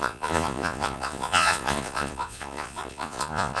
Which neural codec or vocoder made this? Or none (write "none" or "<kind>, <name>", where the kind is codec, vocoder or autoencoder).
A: vocoder, Vocos